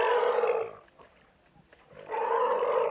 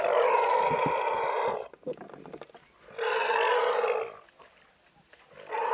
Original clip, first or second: second